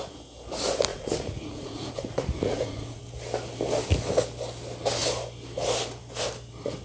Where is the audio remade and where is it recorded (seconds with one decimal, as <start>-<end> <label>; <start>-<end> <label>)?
0.0-0.9 recorded; 0.9-3.0 remade; 3.0-6.8 recorded